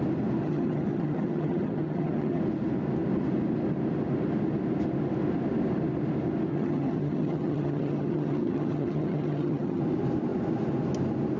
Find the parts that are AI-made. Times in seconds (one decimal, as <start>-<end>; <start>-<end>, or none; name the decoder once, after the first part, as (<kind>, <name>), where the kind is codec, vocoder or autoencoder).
0.4-2.4 (vocoder, HiFi-GAN); 6.5-9.8